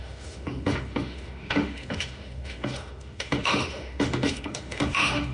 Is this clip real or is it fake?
fake